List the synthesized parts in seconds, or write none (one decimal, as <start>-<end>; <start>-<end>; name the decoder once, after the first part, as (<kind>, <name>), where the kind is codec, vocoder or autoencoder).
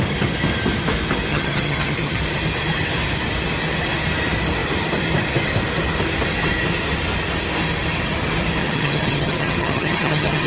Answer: 1.3-2.2 (vocoder, HiFi-GAN); 8.6-10.5